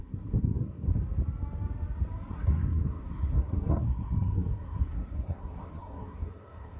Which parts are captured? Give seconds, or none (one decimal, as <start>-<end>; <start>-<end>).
0.9-2.3